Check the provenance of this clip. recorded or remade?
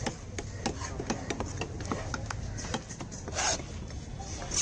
recorded